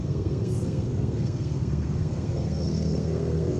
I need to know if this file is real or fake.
fake